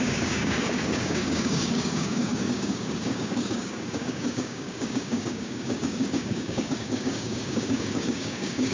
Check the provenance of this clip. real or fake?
fake